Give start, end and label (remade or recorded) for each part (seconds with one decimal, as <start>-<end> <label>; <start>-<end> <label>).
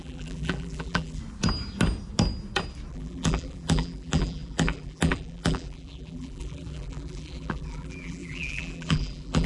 0.0-1.2 remade; 1.2-2.9 recorded; 2.9-9.5 remade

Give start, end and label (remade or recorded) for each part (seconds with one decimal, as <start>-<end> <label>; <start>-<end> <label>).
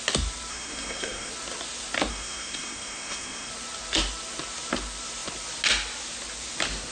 0.0-0.5 recorded; 0.5-1.3 remade; 1.3-2.1 recorded; 2.1-3.5 remade; 3.5-6.9 recorded